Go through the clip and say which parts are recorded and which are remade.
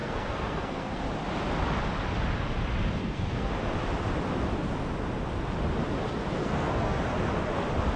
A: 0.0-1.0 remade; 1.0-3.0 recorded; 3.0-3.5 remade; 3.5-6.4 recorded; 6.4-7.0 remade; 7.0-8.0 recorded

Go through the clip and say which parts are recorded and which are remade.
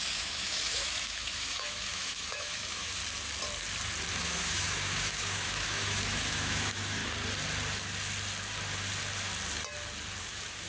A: 0.0-3.0 remade; 3.0-4.1 recorded; 4.1-7.0 remade; 7.0-10.2 recorded; 10.2-10.7 remade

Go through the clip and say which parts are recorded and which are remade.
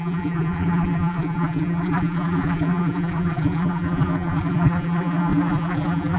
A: 0.0-6.2 remade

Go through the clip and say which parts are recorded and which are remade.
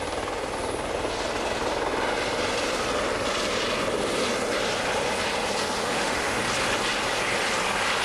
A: 0.0-5.8 recorded; 5.8-6.4 remade; 6.4-8.0 recorded